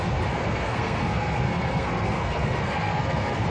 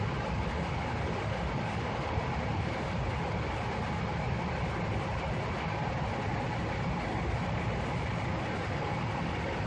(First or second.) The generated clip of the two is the first